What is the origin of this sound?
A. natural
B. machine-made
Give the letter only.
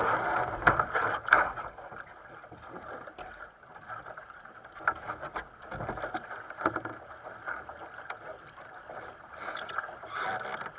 A